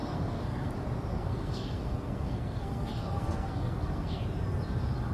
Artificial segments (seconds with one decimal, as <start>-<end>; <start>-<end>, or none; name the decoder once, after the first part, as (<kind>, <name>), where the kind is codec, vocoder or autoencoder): 0.0-0.7 (codec, SNAC); 1.1-4.2